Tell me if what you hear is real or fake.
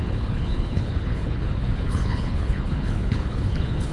fake